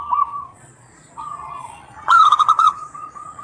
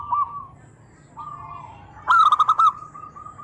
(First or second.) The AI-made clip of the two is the first